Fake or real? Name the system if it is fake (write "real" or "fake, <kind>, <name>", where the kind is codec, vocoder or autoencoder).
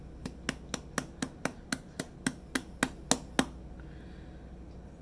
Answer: real